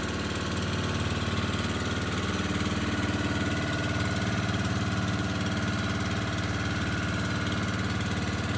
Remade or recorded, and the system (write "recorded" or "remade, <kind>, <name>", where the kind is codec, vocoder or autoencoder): recorded